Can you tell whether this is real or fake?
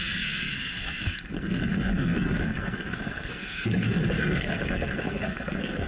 fake